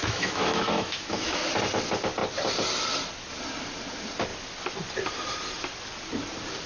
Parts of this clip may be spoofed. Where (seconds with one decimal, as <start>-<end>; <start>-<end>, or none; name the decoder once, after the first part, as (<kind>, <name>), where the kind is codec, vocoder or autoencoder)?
0.0-1.5 (autoencoder, DAC-VAE)